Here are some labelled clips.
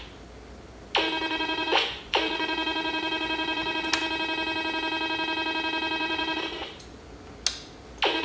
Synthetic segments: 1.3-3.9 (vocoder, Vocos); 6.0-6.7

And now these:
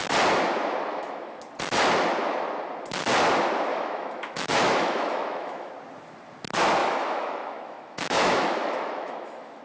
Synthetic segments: 0.9-1.4 (autoencoder, DAC-VAE); 3.7-5.7; 6.8-9.6

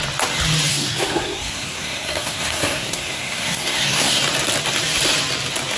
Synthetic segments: 0.7-4.2 (codec, SNAC)

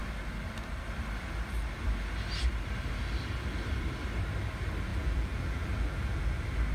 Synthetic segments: 4.9-6.2 (vocoder, BigVGAN v2)

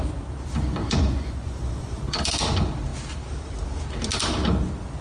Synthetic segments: 0.8-2.2 (vocoder, Vocos)